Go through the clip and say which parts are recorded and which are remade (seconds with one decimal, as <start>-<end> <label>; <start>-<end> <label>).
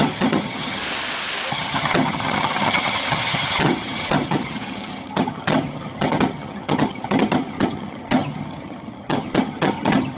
0.0-0.8 remade; 0.8-1.5 recorded; 1.5-10.2 remade